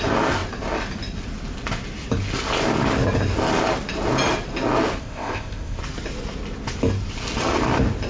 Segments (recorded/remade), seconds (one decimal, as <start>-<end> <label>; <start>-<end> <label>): 0.0-5.0 recorded; 5.0-5.8 remade; 5.8-8.1 recorded